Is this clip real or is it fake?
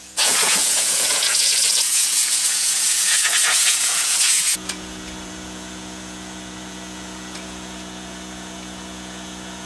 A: fake